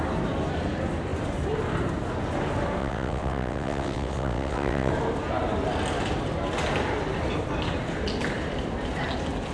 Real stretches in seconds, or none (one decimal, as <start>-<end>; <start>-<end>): 0.0-2.8; 4.9-9.5